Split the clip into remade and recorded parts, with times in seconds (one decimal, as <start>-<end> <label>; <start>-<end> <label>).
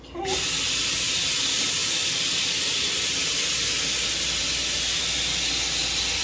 0.0-6.2 recorded